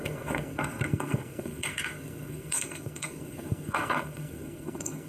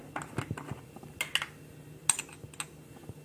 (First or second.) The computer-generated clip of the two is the first